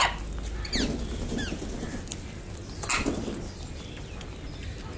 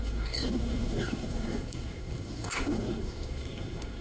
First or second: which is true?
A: first